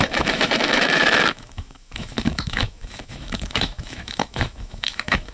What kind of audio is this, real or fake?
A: fake